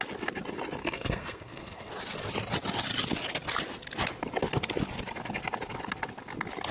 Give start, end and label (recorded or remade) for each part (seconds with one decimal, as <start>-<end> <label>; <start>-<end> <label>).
0.0-0.8 recorded; 0.8-1.9 remade; 1.9-6.7 recorded